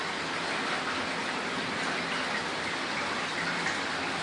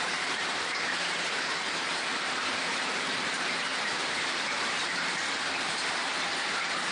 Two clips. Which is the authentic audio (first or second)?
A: first